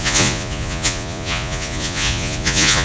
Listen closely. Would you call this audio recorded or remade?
remade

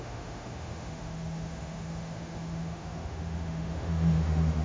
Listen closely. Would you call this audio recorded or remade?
remade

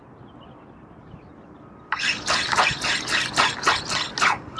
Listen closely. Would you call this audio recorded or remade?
recorded